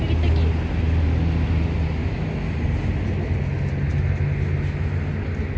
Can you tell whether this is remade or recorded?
recorded